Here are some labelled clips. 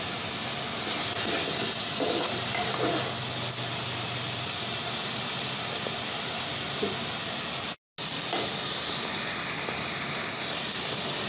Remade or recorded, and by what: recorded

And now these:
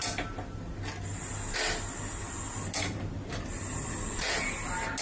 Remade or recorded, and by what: recorded